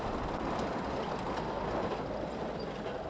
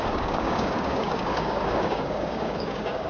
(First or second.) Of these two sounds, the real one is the first